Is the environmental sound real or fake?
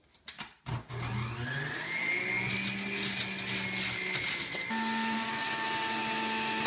real